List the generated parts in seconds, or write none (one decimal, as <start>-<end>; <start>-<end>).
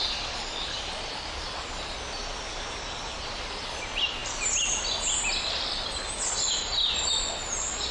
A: none